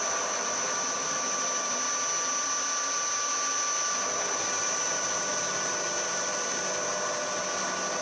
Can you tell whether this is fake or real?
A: real